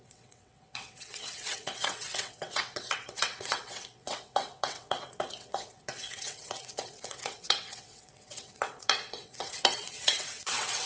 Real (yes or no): no